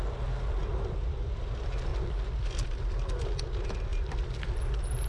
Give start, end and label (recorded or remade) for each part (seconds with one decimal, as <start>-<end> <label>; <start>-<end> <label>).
0.0-0.6 recorded; 0.6-1.4 remade; 1.4-3.9 recorded; 3.9-4.6 remade; 4.6-5.1 recorded